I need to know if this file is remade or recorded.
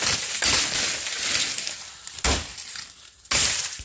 recorded